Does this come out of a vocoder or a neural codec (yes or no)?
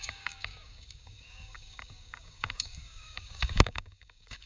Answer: yes